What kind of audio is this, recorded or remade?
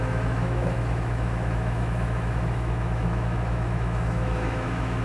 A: remade